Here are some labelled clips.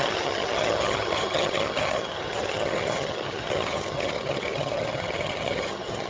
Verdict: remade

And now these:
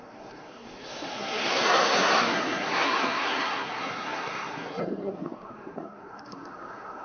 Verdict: remade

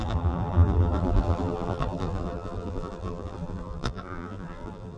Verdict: remade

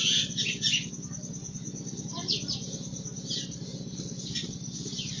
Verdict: recorded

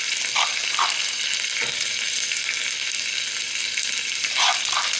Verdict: recorded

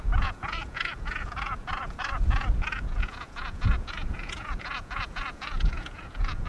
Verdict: remade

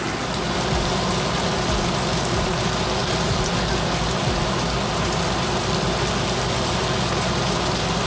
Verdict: recorded